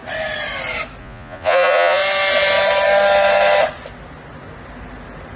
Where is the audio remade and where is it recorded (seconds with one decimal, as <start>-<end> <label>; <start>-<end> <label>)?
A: 0.0-1.0 recorded; 1.0-2.0 remade; 2.0-5.4 recorded